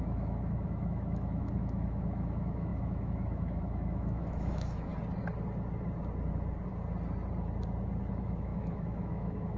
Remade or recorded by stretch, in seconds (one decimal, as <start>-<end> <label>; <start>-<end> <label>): 0.0-4.9 remade; 4.9-8.1 recorded; 8.1-9.6 remade